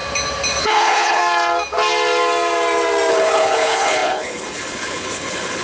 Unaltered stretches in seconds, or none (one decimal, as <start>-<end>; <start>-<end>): 0.0-0.6; 1.2-3.1